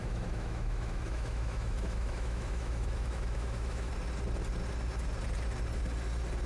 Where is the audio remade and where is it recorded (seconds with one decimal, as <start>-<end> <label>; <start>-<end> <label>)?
0.0-3.9 remade; 3.9-6.5 recorded